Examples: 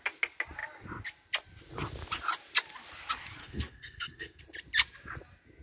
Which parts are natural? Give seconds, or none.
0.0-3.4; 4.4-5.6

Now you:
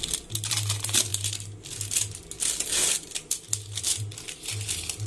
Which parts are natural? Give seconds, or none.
0.0-5.1

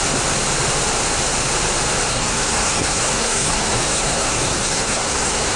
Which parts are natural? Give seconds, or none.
0.0-2.1

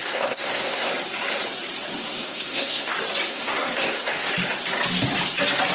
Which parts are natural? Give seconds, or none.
0.9-2.0; 2.9-3.3; 4.3-5.7

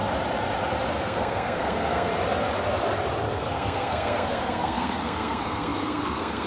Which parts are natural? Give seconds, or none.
0.0-1.0; 2.1-3.3

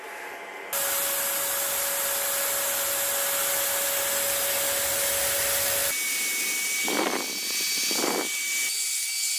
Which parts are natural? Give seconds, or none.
0.0-9.4

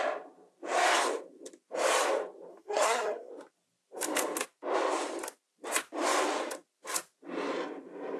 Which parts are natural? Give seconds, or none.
0.0-2.5; 3.3-8.2